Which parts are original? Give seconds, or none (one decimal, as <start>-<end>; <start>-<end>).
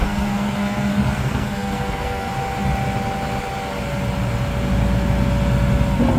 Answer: 2.3-6.2